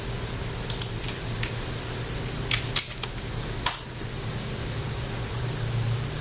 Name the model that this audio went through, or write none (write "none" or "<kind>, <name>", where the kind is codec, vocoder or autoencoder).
none